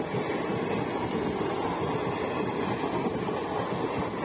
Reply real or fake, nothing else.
real